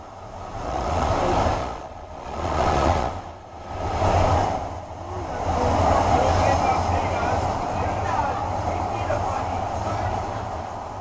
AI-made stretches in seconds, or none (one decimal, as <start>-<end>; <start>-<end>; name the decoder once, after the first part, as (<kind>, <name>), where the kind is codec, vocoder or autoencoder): 0.6-1.1 (vocoder, Vocos); 1.6-3.1